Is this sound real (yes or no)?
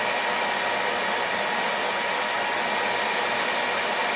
yes